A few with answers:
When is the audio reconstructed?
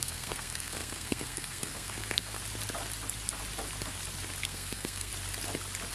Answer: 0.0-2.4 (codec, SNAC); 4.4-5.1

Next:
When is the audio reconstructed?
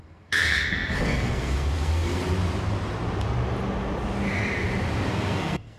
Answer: 0.0-2.2 (codec, SNAC); 5.1-5.8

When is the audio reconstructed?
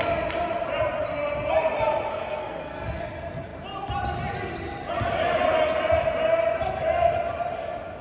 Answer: 2.1-3.0 (codec, SNAC)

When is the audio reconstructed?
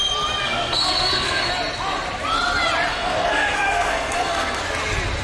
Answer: 0.4-1.5 (codec, SNAC); 2.9-4.6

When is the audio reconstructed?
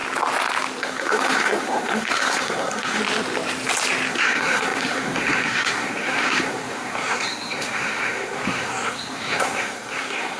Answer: 0.8-3.0 (codec, SNAC); 4.1-10.4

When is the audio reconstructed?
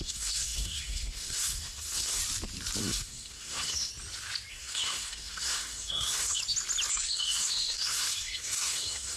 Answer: 0.0-2.2 (codec, SNAC); 2.8-3.9; 4.5-6.4; 6.9-9.2